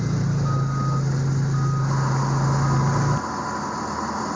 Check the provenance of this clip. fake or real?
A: real